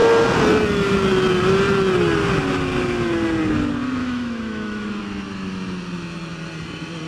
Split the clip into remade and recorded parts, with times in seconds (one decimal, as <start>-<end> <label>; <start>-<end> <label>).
0.0-4.0 recorded; 4.0-5.0 remade; 5.0-7.1 recorded